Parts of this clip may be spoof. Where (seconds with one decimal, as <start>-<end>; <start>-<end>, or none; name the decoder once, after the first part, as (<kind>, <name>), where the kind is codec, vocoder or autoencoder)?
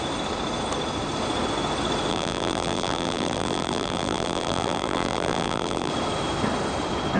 2.1-5.9 (vocoder, BigVGAN v2)